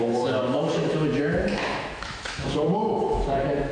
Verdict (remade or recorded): remade